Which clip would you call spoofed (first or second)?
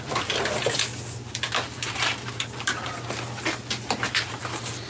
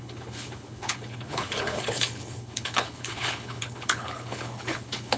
second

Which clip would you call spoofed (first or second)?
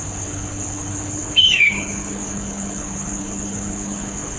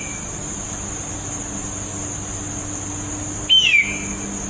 first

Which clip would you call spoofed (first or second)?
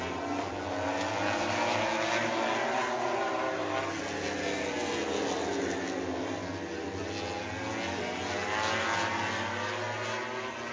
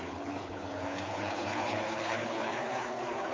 second